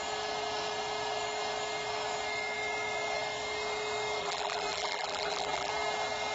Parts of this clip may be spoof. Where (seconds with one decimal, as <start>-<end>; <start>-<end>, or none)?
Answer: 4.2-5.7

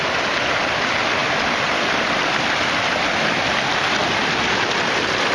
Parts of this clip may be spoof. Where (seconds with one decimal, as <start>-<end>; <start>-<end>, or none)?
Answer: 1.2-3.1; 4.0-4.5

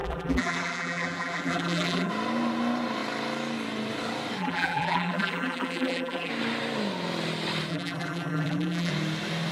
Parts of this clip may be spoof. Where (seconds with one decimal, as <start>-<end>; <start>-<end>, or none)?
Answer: 0.0-2.1; 4.4-6.3; 7.7-8.9

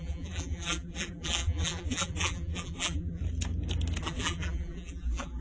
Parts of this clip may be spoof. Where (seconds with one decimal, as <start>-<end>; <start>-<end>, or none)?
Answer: 0.0-3.2; 4.0-5.4